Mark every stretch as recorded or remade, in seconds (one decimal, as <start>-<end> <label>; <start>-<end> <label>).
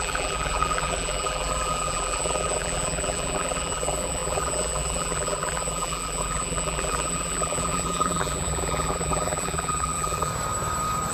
0.0-10.3 remade; 10.3-11.1 recorded